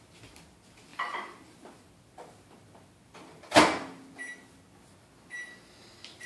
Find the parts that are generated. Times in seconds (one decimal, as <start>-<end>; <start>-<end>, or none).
none